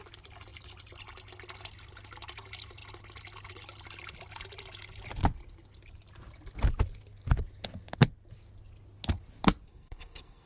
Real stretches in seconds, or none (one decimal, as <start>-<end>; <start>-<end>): 0.0-9.7